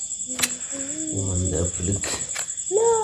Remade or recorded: recorded